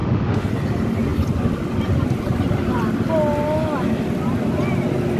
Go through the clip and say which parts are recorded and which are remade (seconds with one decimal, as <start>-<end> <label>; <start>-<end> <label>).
0.0-0.5 remade; 0.5-5.2 recorded

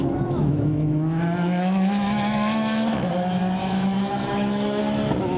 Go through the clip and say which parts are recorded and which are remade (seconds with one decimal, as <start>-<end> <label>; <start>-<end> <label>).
0.0-0.4 recorded; 0.4-3.1 remade; 3.1-3.6 recorded; 3.6-4.8 remade; 4.8-5.4 recorded

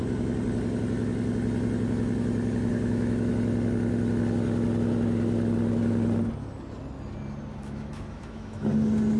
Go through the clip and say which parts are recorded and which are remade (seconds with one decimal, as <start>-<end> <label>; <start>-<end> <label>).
0.0-2.7 recorded; 2.7-3.3 remade; 3.3-7.5 recorded; 7.5-8.7 remade; 8.7-9.2 recorded

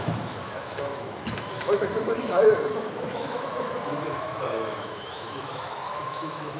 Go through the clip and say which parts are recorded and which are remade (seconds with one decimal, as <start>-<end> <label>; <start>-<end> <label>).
0.0-6.6 remade

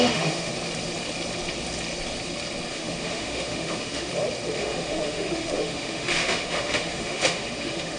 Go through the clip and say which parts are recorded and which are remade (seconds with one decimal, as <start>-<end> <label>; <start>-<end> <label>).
0.0-0.5 remade; 0.5-2.7 recorded; 2.7-4.1 remade; 4.1-4.6 recorded; 4.6-8.0 remade

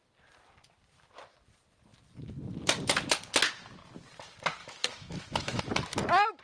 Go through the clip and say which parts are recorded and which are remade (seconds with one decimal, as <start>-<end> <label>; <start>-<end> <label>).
0.0-4.6 recorded; 4.6-5.6 remade; 5.6-6.4 recorded